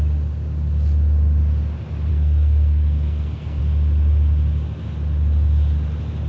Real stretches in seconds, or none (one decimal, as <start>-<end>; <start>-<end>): 0.0-2.1; 3.6-6.3